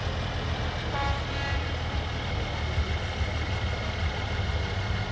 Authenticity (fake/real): real